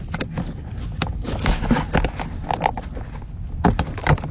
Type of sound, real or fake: real